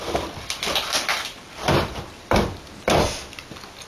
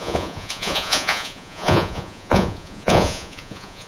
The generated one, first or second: second